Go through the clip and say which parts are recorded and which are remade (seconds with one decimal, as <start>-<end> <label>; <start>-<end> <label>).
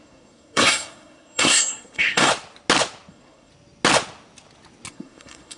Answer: 0.0-2.3 remade; 2.3-3.1 recorded; 3.1-3.5 remade; 3.5-4.9 recorded; 4.9-5.6 remade